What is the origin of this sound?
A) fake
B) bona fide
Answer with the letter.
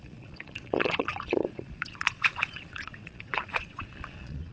A